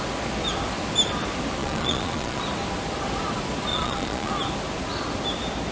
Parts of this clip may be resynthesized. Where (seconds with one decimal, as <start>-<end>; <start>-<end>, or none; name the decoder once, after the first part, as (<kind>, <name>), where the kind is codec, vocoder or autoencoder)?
1.6-2.4 (vocoder, Vocos); 3.7-4.3